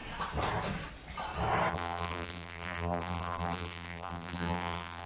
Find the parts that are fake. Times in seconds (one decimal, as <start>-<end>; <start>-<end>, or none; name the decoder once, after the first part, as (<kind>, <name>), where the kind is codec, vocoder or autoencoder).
1.7-5.1 (vocoder, BigVGAN v2)